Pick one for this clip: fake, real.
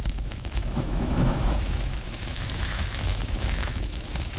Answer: fake